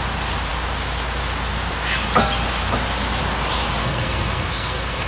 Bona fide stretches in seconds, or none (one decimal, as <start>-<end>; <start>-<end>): 0.0-3.8